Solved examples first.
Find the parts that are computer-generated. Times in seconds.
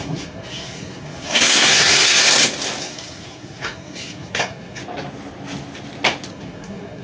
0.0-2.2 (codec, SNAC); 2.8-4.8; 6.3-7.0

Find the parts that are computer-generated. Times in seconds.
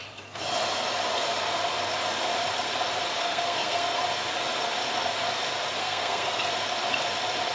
3.2-4.0 (codec, SNAC); 5.8-6.5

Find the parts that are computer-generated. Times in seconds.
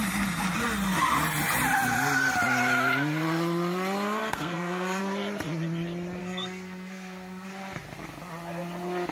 4.2-5.0 (codec, SNAC); 6.2-7.5